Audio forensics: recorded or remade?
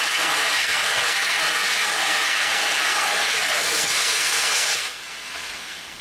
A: remade